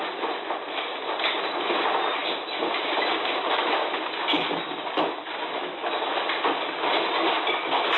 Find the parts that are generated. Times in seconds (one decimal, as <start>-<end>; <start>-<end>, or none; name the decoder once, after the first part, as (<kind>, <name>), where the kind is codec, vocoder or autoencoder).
none